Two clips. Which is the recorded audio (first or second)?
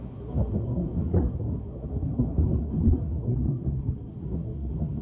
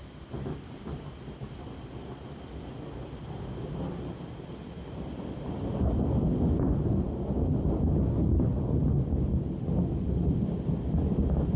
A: second